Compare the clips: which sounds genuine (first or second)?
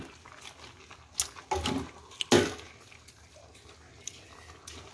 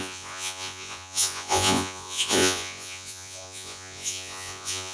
first